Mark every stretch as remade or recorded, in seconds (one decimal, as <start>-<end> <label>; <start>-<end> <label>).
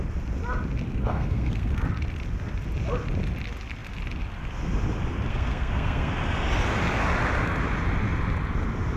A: 0.0-0.9 recorded; 0.9-1.7 remade; 1.7-5.3 recorded; 5.3-6.1 remade; 6.1-9.0 recorded